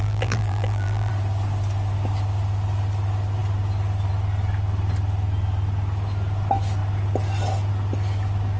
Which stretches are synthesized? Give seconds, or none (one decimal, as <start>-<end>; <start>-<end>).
0.0-1.1